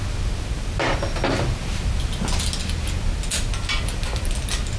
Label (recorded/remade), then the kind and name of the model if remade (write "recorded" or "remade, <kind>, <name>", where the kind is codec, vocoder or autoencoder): recorded